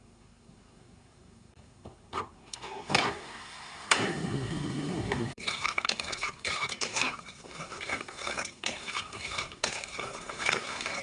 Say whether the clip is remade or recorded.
remade